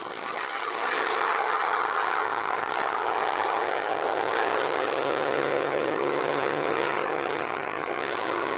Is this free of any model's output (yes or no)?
no